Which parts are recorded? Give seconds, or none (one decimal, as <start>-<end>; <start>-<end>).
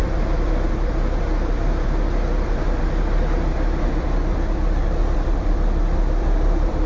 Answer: none